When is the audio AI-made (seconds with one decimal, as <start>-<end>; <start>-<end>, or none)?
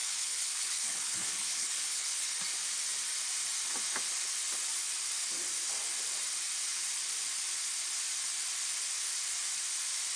0.0-2.4